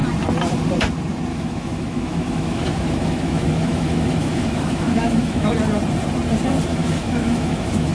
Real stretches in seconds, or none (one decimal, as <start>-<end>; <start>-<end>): 0.0-1.3; 5.5-6.7